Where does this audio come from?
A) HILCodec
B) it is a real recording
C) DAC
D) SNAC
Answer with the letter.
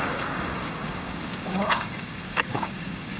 C